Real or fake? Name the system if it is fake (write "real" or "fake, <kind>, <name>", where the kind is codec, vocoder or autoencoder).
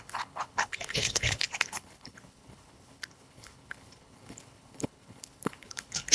fake, codec, HILCodec